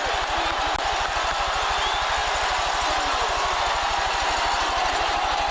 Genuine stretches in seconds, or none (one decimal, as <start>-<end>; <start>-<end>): 0.0-5.5